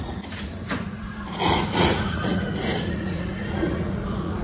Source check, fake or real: fake